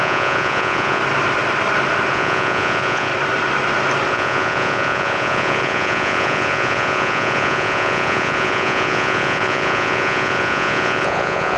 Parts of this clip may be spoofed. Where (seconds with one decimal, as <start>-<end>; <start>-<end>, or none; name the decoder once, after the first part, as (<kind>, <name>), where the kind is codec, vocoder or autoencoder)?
0.0-1.0 (vocoder, Vocos); 2.1-3.1; 4.1-11.6